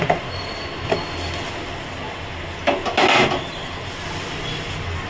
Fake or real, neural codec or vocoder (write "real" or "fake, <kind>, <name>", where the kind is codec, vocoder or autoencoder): real